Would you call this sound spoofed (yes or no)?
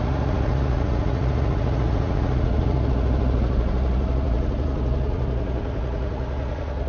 yes